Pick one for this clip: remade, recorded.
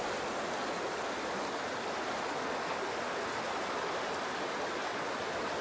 recorded